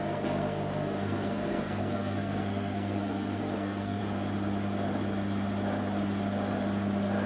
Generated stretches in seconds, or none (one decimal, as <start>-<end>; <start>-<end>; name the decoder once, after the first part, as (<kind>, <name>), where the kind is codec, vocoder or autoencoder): 0.0-4.0 (codec, SNAC)